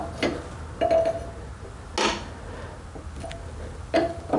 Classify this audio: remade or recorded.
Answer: recorded